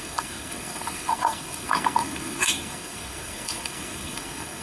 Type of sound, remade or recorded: remade